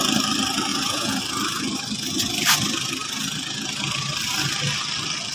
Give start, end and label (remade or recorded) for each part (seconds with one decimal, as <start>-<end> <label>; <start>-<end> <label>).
0.0-0.7 recorded; 0.7-1.2 remade; 1.2-5.3 recorded